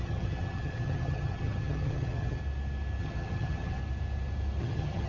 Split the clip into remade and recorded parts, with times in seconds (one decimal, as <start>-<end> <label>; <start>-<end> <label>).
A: 0.0-2.4 remade; 2.4-3.0 recorded; 3.0-3.8 remade; 3.8-4.6 recorded; 4.6-5.1 remade